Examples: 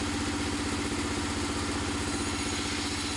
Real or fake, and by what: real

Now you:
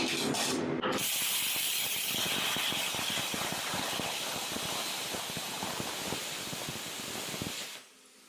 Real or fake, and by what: real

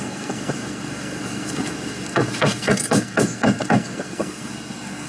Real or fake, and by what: fake, codec, SNAC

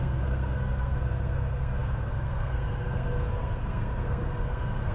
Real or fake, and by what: fake, codec, SNAC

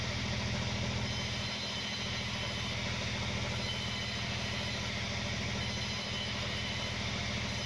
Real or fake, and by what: real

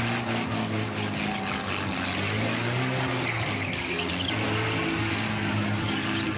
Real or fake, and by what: real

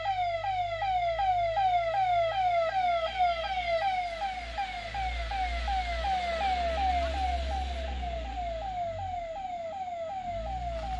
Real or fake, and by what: real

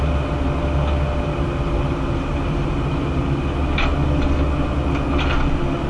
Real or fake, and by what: real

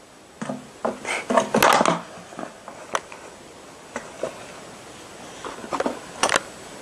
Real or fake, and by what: real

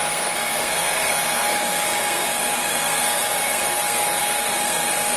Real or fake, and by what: fake, codec, SNAC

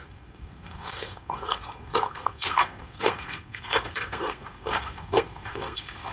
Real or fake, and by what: fake, codec, SNAC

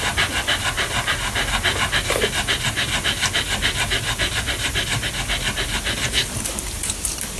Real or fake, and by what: real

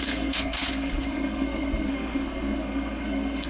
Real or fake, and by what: fake, codec, SNAC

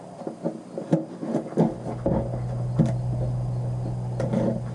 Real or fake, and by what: real